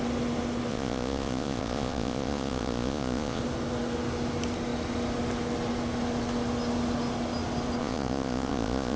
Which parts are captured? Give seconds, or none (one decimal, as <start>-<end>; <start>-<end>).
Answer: 0.0-0.7; 3.4-7.8